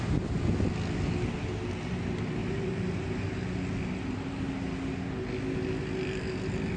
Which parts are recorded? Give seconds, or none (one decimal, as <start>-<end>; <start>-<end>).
0.0-6.8